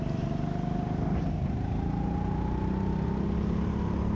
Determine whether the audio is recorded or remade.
recorded